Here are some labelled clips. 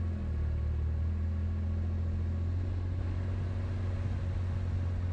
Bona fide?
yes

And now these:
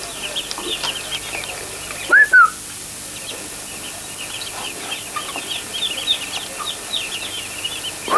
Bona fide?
yes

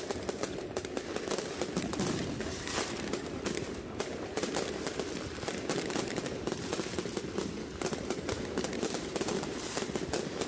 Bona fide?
no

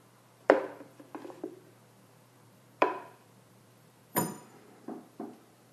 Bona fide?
no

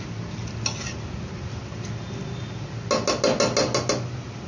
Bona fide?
yes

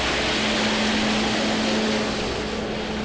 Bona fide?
yes